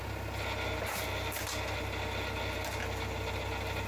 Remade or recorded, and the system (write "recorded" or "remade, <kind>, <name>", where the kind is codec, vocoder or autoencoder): recorded